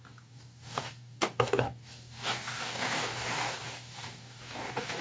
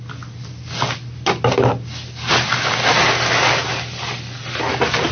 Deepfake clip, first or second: first